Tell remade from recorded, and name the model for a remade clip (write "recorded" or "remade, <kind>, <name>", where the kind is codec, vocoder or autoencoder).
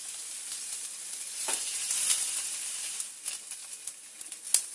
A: recorded